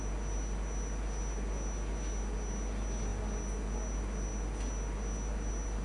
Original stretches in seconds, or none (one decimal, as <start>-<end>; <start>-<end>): 0.0-5.8